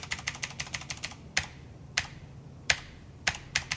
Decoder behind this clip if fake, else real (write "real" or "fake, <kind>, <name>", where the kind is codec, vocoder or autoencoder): real